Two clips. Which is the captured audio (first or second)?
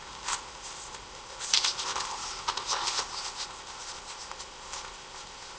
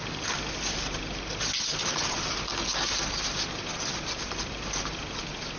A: second